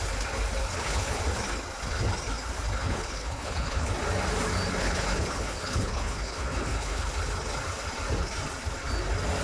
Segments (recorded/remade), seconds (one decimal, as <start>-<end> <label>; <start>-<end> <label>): 0.0-0.6 recorded; 0.6-1.2 remade; 1.2-2.8 recorded; 2.8-3.9 remade; 3.9-4.8 recorded; 4.8-7.1 remade; 7.1-9.4 recorded